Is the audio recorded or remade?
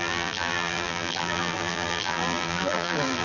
remade